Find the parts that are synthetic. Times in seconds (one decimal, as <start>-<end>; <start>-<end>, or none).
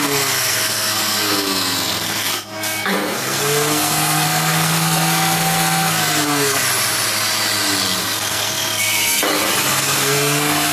0.0-6.6; 8.0-9.2; 9.7-10.7